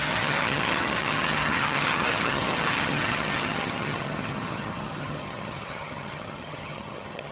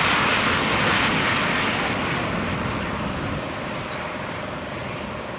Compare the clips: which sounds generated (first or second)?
first